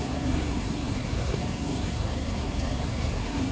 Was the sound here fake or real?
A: fake